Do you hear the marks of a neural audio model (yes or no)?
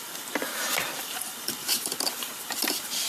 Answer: yes